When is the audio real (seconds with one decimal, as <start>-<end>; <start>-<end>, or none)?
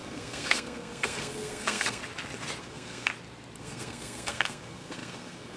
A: 2.0-2.6; 3.1-3.6